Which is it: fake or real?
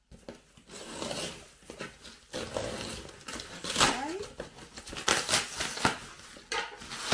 real